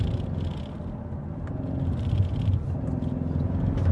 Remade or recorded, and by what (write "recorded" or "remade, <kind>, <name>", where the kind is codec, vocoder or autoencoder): recorded